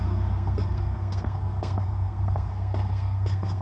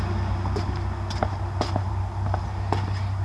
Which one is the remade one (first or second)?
first